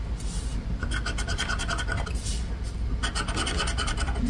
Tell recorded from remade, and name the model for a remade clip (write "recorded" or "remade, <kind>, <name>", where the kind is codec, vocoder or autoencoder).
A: recorded